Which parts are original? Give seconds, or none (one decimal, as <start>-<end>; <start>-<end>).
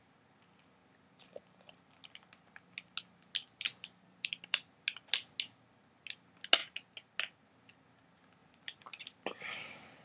0.0-0.8; 1.8-3.4; 4.7-8.4; 9.0-10.0